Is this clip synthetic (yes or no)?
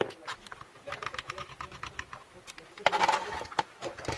no